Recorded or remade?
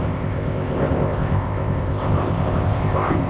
remade